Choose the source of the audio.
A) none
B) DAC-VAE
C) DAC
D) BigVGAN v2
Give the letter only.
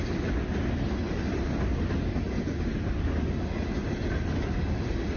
A